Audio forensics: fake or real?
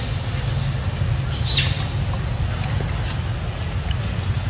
real